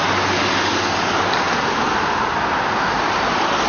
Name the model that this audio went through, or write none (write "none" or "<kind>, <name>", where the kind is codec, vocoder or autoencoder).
none